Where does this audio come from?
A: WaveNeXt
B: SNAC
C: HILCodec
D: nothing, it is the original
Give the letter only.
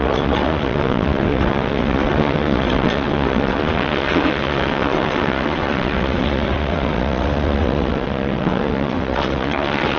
A